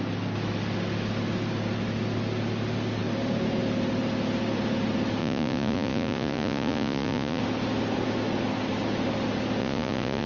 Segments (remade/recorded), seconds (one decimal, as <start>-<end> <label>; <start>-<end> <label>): 0.0-5.2 recorded; 5.2-7.4 remade; 7.4-9.6 recorded; 9.6-10.3 remade